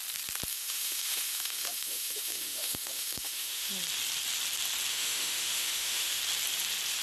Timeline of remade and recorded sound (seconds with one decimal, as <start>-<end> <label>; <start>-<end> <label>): 0.0-0.5 recorded; 0.5-3.7 remade; 3.7-4.9 recorded; 4.9-6.2 remade; 6.2-7.0 recorded